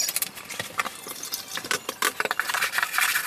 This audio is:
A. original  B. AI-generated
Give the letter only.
B